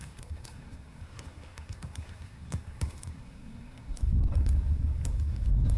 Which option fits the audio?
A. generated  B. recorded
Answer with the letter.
A